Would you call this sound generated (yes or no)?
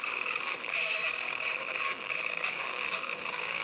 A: yes